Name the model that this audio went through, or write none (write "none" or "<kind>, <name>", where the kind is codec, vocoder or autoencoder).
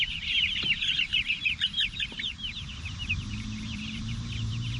vocoder, BigVGAN v2